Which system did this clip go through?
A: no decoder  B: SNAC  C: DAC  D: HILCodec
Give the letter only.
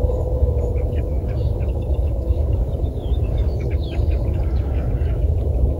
C